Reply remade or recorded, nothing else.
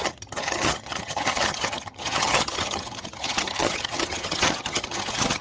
remade